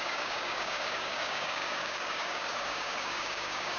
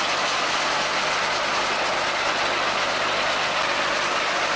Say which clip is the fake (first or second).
first